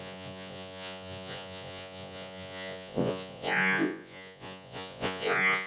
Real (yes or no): no